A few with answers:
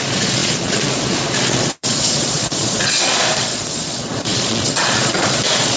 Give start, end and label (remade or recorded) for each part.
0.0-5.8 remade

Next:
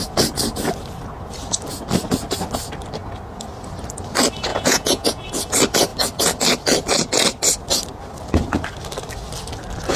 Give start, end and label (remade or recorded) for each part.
0.0-4.5 recorded; 4.5-5.3 remade; 5.3-10.0 recorded